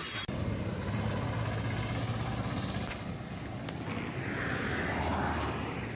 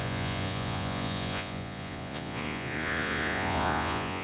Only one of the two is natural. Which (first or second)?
first